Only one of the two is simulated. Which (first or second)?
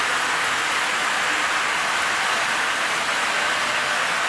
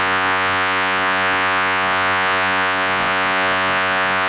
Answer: second